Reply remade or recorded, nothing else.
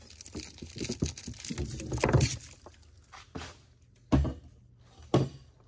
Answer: recorded